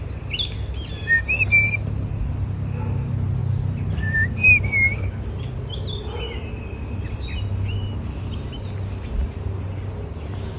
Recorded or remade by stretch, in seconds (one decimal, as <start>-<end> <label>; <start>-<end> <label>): 0.0-10.6 recorded